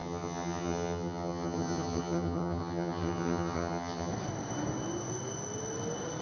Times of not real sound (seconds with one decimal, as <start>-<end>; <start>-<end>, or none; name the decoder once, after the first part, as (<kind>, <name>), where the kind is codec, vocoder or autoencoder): 0.0-4.1 (vocoder, HiFi-GAN)

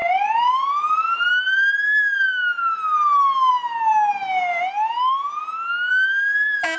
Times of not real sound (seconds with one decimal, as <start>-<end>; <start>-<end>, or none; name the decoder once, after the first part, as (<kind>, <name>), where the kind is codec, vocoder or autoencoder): none

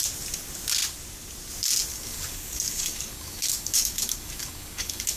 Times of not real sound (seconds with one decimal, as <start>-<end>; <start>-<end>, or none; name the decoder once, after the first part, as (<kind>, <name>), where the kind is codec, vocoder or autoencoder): 1.9-5.2 (codec, DAC)

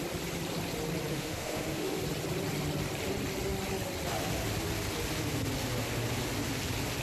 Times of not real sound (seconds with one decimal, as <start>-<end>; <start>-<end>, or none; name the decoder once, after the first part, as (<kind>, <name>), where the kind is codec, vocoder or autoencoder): 1.1-2.0 (autoencoder, DAC-VAE)

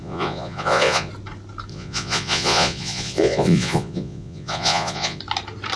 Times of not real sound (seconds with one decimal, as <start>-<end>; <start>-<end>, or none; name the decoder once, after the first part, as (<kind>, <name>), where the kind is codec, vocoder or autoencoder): 0.0-1.1 (vocoder, Vocos); 1.7-5.2

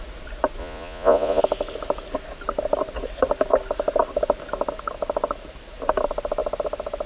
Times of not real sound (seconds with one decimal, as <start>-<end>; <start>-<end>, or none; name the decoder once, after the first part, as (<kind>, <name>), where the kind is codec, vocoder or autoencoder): 0.6-1.4 (vocoder, Vocos)